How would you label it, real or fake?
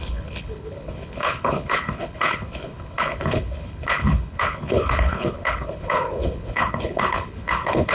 fake